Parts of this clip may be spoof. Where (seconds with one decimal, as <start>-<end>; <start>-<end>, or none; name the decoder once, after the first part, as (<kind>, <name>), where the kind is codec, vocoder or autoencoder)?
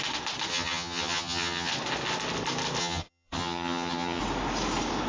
0.5-1.7 (vocoder, HiFi-GAN); 2.8-4.2